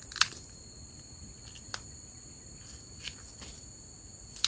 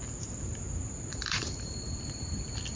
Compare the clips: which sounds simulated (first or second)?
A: second